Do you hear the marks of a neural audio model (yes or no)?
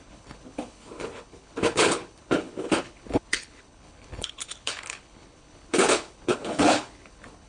yes